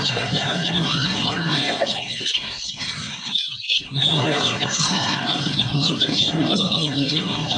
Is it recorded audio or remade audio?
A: remade